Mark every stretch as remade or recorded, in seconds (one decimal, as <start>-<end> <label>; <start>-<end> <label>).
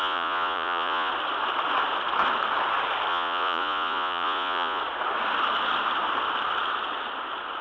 0.0-1.1 remade; 1.1-3.1 recorded; 3.1-4.8 remade; 4.8-7.6 recorded